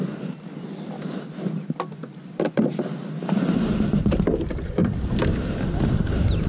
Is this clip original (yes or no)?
yes